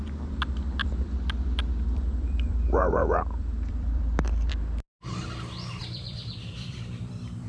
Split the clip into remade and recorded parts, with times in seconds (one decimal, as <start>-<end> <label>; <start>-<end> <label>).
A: 0.0-0.8 recorded; 0.8-4.5 remade; 4.5-5.8 recorded; 5.8-7.5 remade